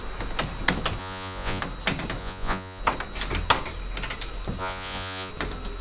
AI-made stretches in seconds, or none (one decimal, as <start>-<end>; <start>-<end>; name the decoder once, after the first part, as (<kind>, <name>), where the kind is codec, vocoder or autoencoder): 1.0-1.6 (vocoder, Vocos); 2.2-2.8; 4.6-5.3